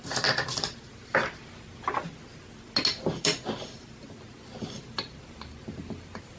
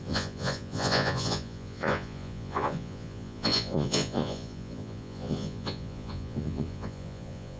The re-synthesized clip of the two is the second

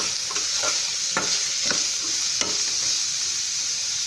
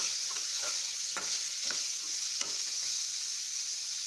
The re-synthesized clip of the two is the second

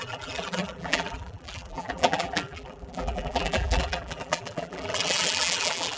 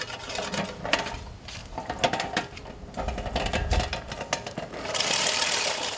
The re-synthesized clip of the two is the first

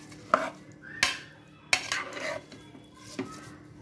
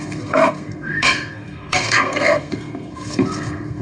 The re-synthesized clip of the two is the second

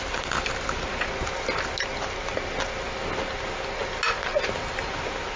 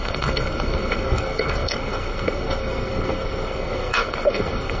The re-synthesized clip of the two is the second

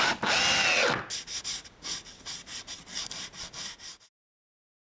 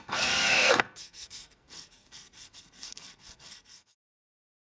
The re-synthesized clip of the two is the second